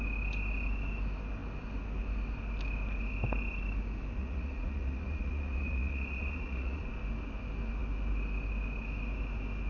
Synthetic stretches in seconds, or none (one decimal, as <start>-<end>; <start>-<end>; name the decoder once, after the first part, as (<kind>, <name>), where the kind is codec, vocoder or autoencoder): 4.2-6.8 (vocoder, Vocos)